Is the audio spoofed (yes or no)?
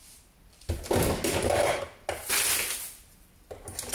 no